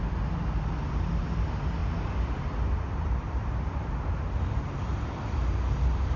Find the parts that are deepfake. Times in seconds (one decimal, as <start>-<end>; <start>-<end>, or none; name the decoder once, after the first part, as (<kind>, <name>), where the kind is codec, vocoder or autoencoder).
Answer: none